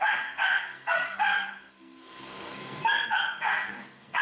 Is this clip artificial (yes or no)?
yes